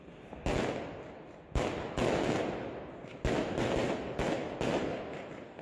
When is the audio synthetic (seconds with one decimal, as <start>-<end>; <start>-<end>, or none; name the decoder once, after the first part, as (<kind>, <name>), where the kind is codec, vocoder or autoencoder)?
none